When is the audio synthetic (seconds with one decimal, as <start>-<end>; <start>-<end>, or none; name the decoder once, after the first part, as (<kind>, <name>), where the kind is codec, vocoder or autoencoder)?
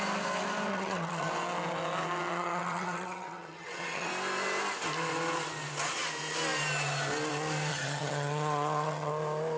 0.7-1.3 (vocoder, HiFi-GAN); 2.3-4.1; 7.7-9.1